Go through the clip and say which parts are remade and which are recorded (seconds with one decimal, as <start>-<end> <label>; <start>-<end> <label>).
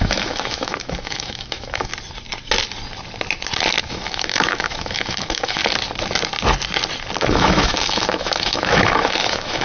0.0-1.9 remade; 1.9-3.8 recorded; 3.8-5.6 remade; 5.6-7.2 recorded; 7.2-9.6 remade